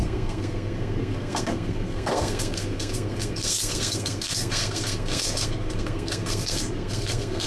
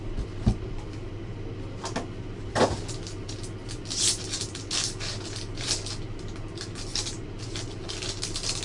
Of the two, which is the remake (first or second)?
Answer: first